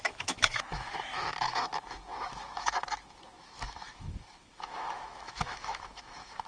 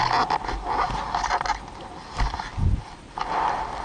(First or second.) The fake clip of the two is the first